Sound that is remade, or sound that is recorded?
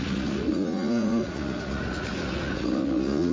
remade